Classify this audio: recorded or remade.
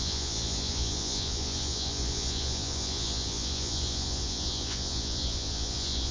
remade